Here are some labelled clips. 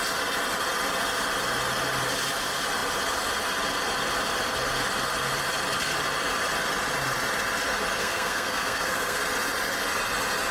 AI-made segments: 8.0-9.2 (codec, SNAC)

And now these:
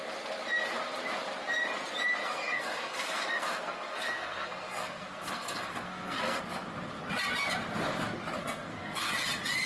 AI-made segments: 2.2-6.4 (codec, SNAC); 8.4-9.1

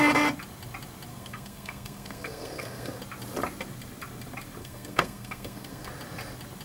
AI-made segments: 1.1-3.0 (codec, SNAC); 4.6-5.9

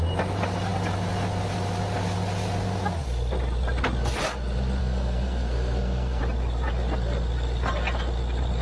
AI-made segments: 4.8-6.2 (codec, SNAC)

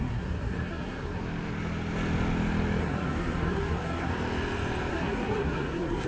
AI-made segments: 0.0-1.2 (codec, SNAC); 2.8-4.1; 4.9-6.1

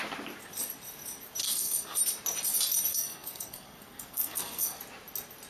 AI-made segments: 1.4-2.0 (codec, SNAC); 2.9-4.8

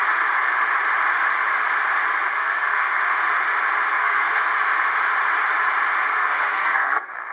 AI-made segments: 2.3-3.0 (codec, SNAC); 3.9-4.4; 6.1-7.3

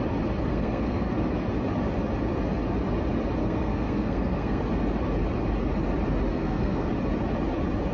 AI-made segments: 0.5-1.1 (codec, SNAC); 3.4-4.6; 6.3-6.9